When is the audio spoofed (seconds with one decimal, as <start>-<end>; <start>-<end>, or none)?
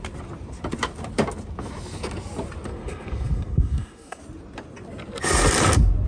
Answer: 2.7-4.2